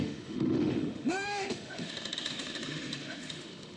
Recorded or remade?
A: remade